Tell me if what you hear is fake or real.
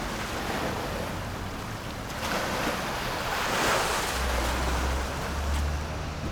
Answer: real